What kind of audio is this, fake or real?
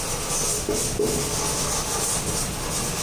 real